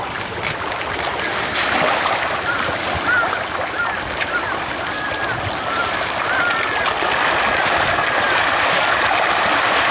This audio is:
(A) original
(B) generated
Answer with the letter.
A